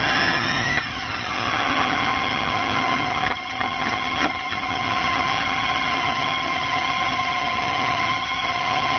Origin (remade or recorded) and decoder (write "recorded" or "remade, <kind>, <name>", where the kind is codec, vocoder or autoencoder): remade, vocoder, HiFi-GAN